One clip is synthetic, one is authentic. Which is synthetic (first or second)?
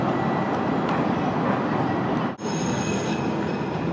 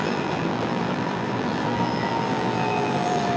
second